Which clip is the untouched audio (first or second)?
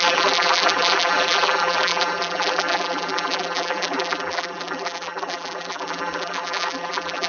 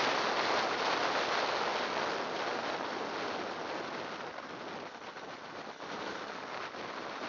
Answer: second